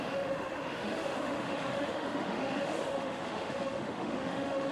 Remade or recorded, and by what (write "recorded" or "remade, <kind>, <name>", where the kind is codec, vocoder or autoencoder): remade, autoencoder, DAC-VAE